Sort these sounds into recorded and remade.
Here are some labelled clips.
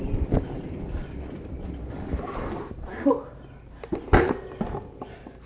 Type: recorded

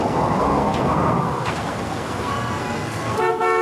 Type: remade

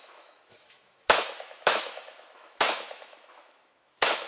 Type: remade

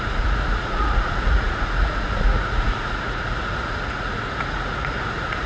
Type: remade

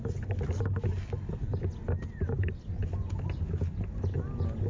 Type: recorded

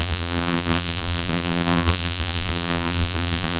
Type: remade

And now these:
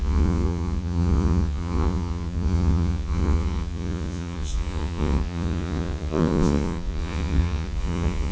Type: remade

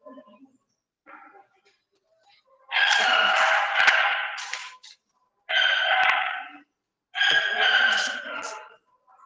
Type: recorded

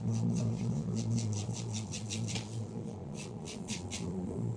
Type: remade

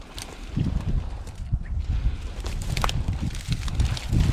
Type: recorded